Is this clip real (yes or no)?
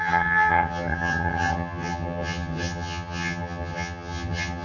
no